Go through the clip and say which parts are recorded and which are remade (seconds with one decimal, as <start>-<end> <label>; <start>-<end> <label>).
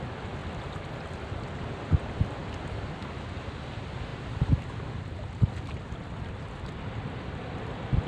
0.0-4.1 recorded; 4.1-6.2 remade; 6.2-8.1 recorded